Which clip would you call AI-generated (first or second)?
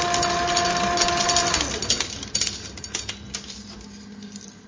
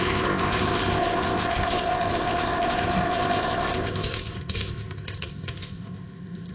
second